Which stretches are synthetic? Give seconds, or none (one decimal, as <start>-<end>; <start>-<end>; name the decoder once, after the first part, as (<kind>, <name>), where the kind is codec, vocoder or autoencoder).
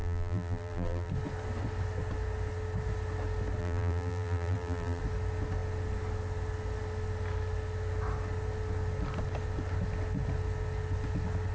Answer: 0.0-1.1 (vocoder, BigVGAN v2); 3.6-5.0